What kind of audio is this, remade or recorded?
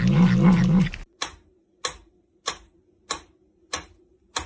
recorded